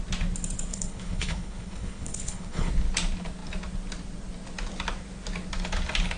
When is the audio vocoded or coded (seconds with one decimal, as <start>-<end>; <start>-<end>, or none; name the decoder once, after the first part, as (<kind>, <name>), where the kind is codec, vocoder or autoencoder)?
0.7-2.7 (codec, HILCodec)